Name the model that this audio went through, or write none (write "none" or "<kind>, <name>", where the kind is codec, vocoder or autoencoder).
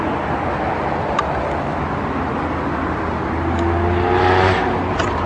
none